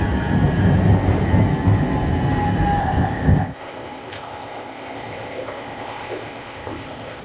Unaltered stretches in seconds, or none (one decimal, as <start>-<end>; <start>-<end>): 0.0-2.8